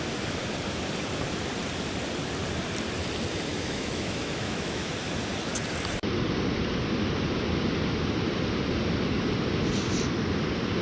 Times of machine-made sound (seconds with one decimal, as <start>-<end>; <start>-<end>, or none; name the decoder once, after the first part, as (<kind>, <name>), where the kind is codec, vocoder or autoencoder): 3.5-4.9 (autoencoder, DAC-VAE)